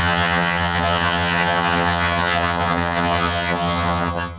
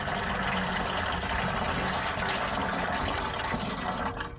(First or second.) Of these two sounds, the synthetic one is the first